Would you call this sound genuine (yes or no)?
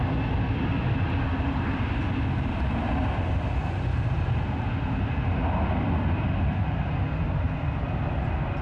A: yes